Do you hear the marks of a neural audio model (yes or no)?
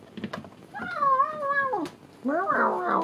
no